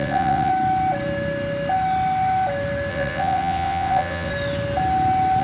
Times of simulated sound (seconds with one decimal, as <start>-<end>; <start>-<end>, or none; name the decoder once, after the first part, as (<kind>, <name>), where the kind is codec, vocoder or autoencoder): 0.0-0.5 (vocoder, WaveNeXt); 2.9-4.3